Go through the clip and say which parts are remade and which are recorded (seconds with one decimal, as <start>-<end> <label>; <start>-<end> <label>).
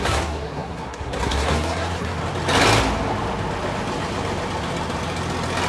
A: 0.0-2.2 remade; 2.2-5.7 recorded